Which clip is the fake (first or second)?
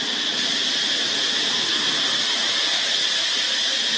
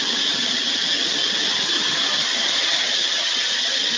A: second